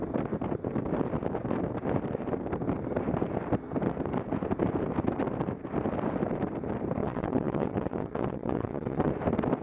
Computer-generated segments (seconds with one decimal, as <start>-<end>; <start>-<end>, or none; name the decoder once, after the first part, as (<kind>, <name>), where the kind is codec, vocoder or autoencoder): 7.0-9.1 (vocoder, WaveNeXt)